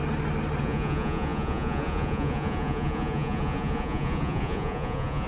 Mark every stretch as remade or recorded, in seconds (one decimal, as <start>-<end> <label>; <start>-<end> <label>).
0.0-0.6 recorded; 0.6-5.3 remade